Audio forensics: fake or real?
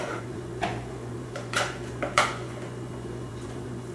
fake